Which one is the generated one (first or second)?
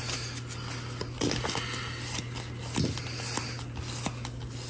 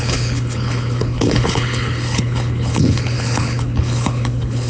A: second